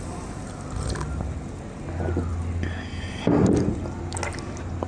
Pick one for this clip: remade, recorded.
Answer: recorded